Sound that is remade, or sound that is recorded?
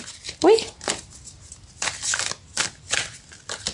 recorded